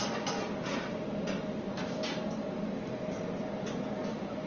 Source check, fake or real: real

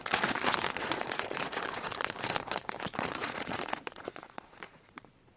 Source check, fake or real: fake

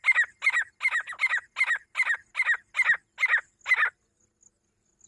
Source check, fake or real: real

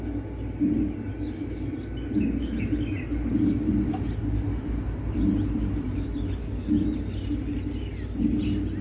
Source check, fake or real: real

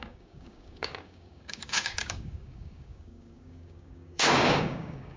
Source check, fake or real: fake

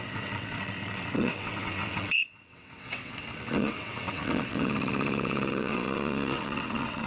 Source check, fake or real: fake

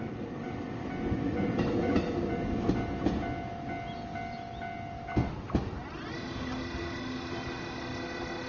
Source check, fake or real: real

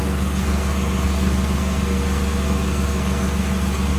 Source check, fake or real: fake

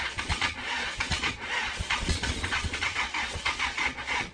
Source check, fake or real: fake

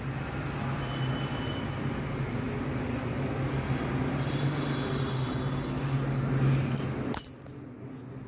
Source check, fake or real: real